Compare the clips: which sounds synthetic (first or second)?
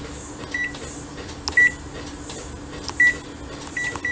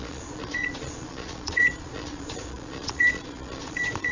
second